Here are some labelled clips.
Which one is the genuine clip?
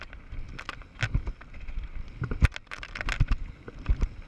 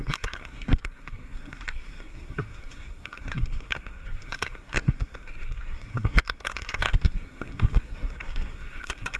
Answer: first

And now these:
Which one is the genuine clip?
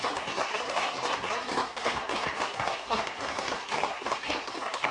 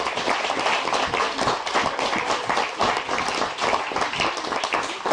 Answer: second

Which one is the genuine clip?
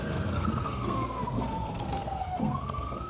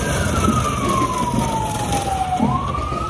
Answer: second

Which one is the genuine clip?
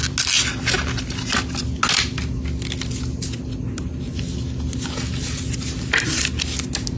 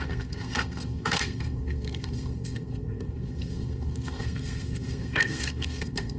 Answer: first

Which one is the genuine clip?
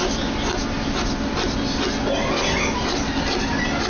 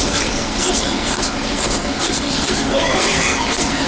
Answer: first